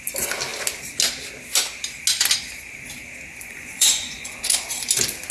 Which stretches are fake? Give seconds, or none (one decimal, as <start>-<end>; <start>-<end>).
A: 3.3-4.3